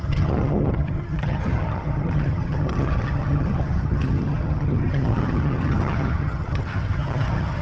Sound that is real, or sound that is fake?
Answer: fake